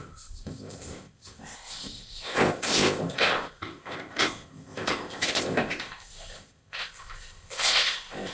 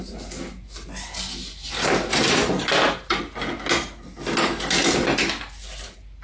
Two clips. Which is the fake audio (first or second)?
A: first